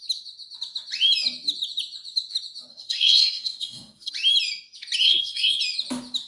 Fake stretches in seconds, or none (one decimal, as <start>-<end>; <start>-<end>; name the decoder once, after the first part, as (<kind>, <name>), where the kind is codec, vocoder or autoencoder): 2.7-4.1 (codec, SNAC); 5.0-5.6